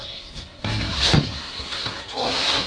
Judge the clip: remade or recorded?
remade